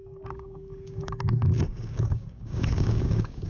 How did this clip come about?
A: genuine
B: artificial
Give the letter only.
B